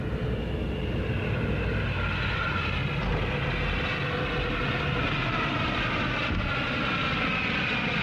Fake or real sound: real